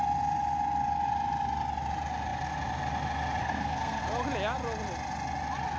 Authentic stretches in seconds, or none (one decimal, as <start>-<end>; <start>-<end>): 0.0-3.4; 4.0-5.8